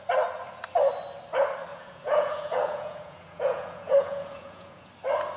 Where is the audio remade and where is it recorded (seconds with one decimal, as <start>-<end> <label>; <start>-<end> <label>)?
0.0-1.7 recorded; 1.7-4.9 remade; 4.9-5.4 recorded